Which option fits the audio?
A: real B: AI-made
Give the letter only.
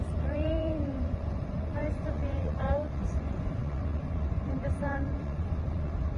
B